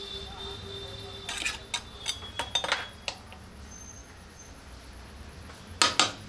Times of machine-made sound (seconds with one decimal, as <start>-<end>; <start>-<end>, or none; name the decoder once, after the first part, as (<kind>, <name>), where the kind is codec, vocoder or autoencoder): none